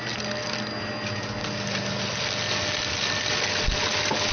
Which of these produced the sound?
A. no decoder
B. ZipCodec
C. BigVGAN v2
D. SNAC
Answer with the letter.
A